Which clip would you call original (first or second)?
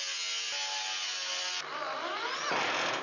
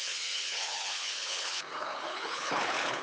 first